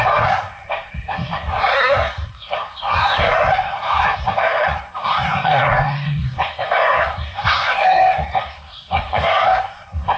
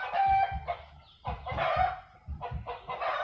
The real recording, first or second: second